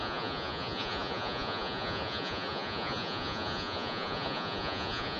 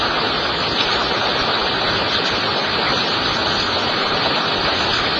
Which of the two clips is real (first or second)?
second